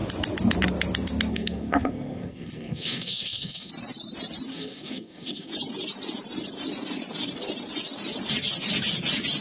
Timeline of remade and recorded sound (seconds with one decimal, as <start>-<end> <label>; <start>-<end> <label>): 0.0-1.3 recorded; 1.3-3.7 remade; 3.7-4.5 recorded; 4.5-5.5 remade; 5.5-9.4 recorded